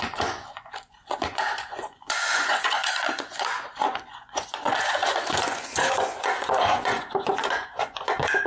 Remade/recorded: remade